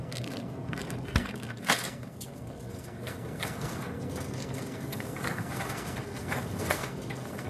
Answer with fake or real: fake